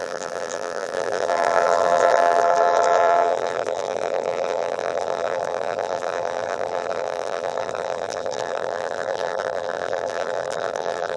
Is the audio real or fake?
fake